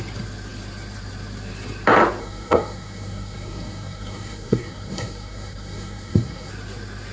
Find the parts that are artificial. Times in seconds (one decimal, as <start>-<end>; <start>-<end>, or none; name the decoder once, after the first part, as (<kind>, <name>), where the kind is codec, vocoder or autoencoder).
2.2-6.5 (codec, SNAC)